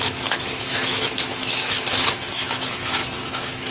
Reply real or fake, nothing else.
fake